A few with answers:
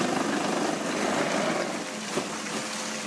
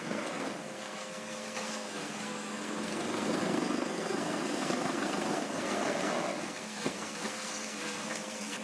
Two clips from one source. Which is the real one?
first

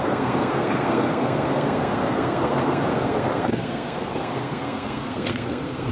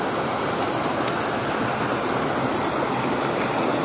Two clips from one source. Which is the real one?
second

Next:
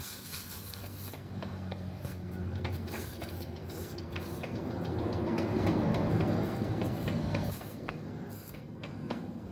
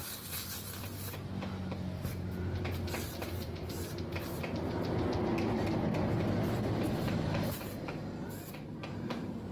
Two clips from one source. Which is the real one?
second